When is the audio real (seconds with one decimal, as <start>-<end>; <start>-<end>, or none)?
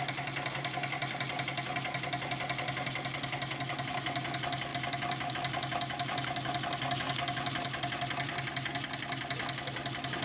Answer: 0.0-10.2